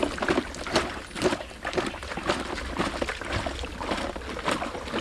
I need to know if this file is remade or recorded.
recorded